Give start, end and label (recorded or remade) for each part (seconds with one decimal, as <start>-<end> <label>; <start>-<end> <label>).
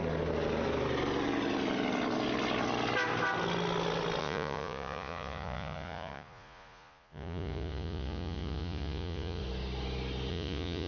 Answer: 0.0-4.2 recorded; 4.2-9.4 remade; 9.4-10.3 recorded; 10.3-10.9 remade